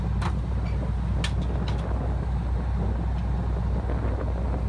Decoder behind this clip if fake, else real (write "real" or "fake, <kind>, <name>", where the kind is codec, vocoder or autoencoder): real